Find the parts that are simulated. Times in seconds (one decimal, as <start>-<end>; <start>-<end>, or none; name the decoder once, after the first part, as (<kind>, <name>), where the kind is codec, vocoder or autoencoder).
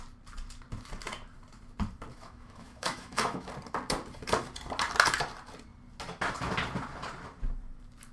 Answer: 2.1-3.5 (autoencoder, DAC-VAE)